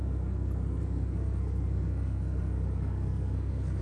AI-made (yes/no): yes